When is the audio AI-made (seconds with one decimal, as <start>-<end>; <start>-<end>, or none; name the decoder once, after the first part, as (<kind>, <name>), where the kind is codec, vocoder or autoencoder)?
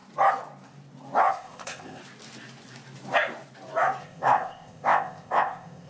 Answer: 1.3-2.0 (codec, ZipCodec); 4.0-5.9